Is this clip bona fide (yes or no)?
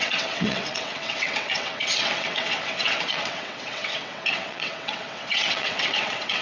no